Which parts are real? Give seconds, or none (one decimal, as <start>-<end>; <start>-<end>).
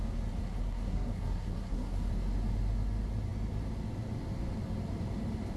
0.0-0.4; 2.1-5.6